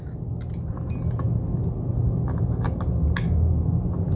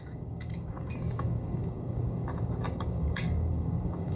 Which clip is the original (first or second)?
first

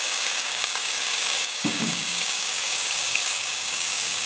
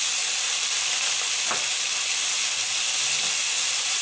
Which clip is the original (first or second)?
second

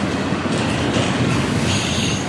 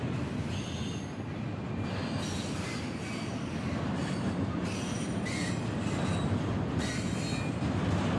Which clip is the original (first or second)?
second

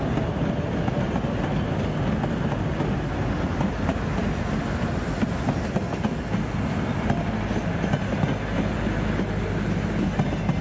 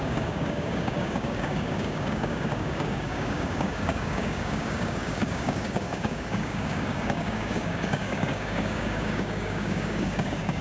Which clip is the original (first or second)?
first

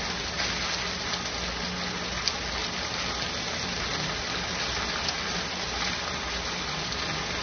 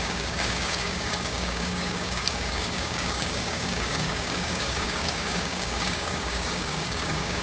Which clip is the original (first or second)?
first